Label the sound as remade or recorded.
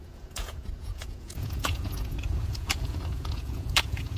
remade